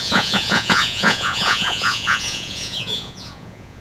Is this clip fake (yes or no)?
yes